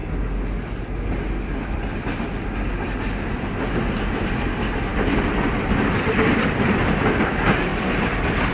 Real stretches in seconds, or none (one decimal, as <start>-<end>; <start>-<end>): 0.0-3.9; 7.7-8.5